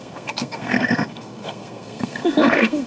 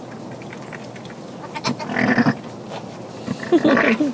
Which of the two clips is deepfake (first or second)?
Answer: first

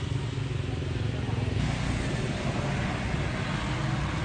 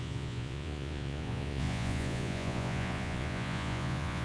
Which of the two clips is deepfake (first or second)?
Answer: second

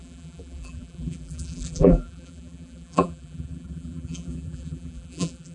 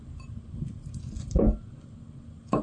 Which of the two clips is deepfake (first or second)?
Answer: first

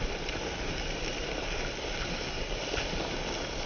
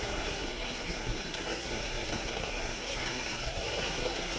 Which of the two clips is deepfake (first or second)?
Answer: second